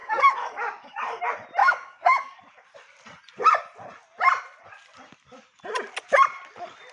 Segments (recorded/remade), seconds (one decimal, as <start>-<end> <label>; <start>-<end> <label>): 0.0-1.2 remade; 1.2-1.6 recorded; 1.6-2.4 remade; 2.4-6.9 recorded